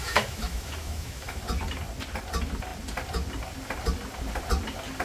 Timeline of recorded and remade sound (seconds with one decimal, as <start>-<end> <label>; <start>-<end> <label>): 0.0-1.4 remade; 1.4-5.0 recorded